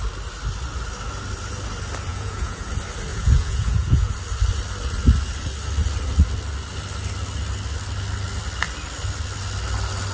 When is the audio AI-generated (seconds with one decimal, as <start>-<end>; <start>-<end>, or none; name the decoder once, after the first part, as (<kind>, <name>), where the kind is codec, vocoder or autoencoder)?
2.1-2.7 (vocoder, Vocos); 3.1-4.1